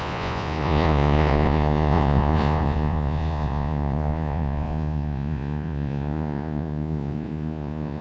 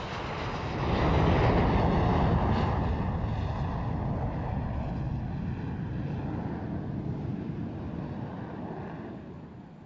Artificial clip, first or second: first